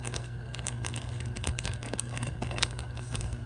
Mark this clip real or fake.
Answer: fake